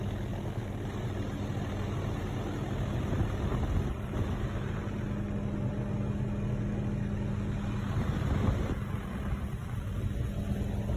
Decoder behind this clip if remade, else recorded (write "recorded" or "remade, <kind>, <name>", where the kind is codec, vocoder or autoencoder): recorded